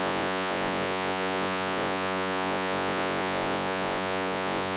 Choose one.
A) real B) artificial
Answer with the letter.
B